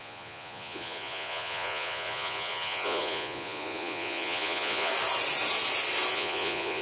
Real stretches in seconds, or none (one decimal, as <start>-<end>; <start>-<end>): 4.9-6.1